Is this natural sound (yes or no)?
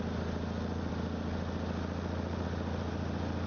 yes